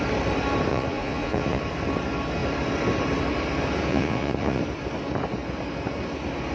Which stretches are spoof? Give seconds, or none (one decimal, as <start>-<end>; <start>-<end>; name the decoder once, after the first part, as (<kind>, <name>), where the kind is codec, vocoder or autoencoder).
0.7-1.6 (vocoder, Vocos); 3.9-4.6